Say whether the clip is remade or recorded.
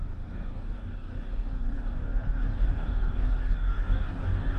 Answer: remade